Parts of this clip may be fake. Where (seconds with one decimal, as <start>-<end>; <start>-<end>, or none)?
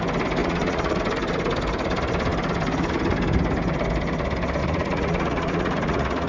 0.4-1.0; 4.6-6.3